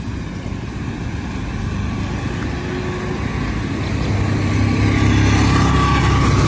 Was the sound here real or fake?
real